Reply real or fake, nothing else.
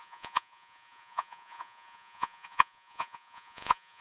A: fake